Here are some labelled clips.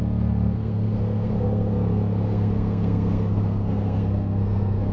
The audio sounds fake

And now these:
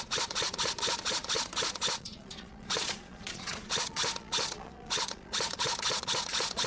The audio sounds fake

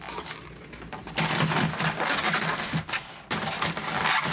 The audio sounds real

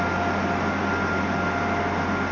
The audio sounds real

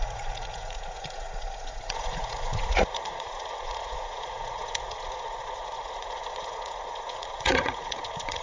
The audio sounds fake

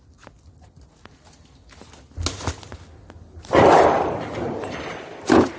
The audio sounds real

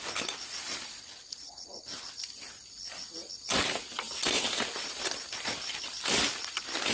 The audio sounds real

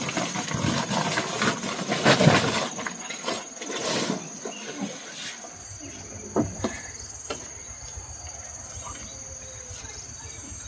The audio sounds real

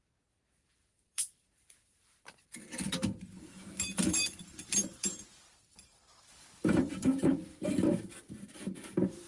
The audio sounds fake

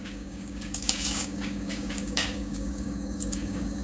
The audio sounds fake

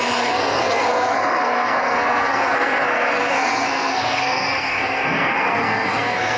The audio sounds fake